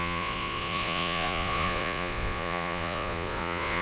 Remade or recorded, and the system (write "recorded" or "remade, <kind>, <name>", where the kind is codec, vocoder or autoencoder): remade, vocoder, Vocos